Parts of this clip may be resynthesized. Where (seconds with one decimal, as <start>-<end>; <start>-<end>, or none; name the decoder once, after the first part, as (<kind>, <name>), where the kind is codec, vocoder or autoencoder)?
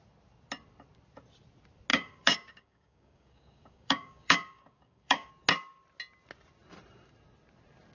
1.9-5.3 (codec, DAC)